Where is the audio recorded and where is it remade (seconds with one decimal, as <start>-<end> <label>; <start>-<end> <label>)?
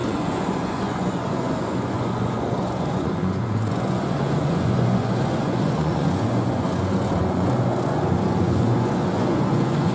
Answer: 0.0-9.9 remade